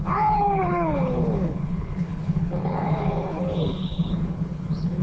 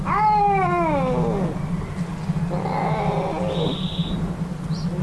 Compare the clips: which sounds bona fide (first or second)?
second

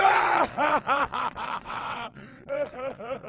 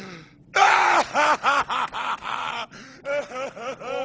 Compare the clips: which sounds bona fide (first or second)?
second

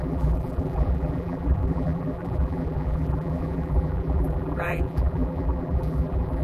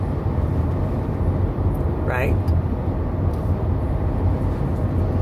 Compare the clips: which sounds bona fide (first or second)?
second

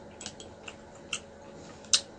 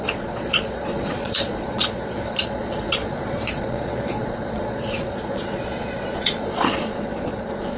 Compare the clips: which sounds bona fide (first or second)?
first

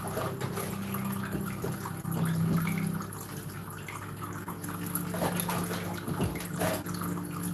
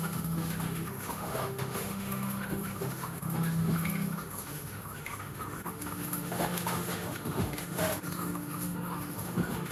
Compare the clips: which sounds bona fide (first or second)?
first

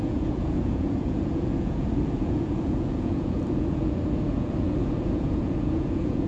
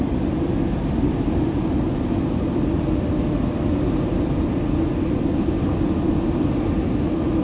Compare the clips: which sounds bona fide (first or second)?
second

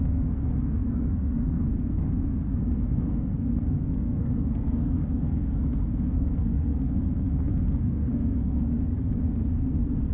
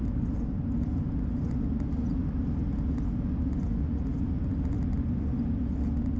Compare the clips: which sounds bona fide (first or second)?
second